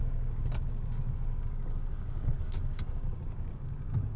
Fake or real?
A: fake